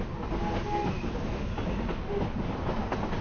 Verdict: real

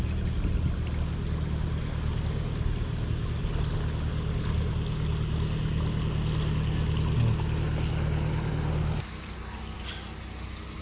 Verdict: real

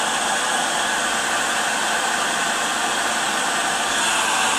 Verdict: real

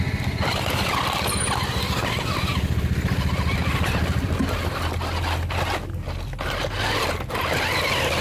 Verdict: real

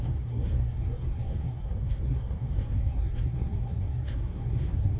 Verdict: fake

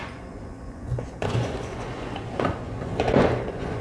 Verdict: fake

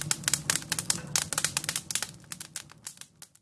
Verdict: real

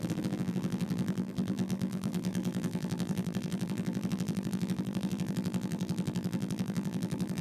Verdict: fake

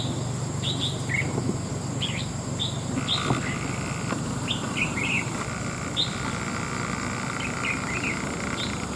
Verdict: real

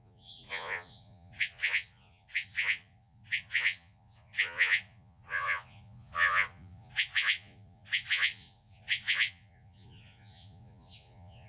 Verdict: fake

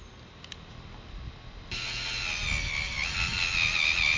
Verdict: real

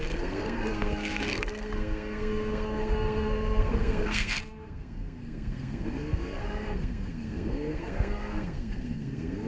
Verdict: fake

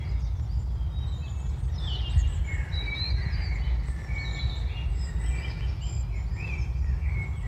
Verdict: real